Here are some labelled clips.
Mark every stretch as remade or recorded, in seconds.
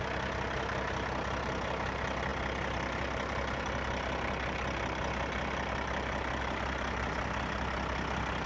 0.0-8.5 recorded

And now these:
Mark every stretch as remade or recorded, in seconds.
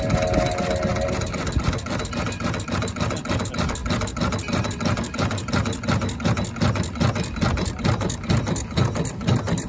0.0-9.7 recorded